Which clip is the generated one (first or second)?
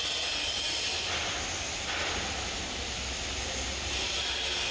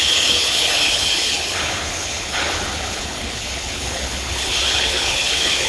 second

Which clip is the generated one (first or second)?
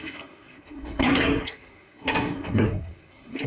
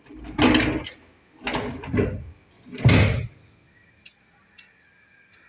first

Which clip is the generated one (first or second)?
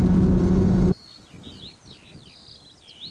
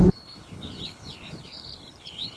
second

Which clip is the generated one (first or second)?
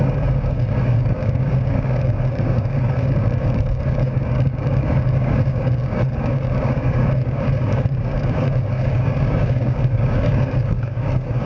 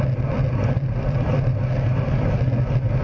first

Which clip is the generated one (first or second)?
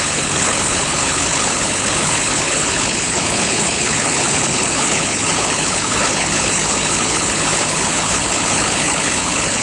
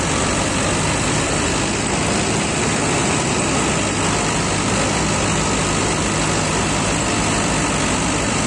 first